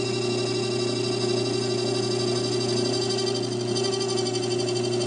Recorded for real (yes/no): yes